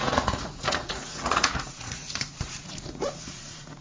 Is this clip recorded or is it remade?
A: remade